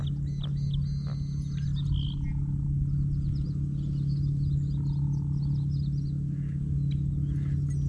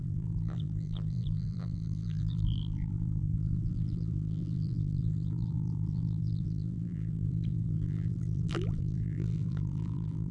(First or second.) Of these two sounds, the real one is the first